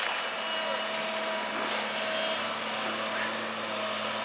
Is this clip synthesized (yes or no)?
no